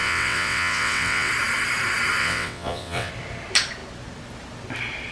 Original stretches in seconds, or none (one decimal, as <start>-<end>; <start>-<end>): 1.3-2.2; 3.1-5.1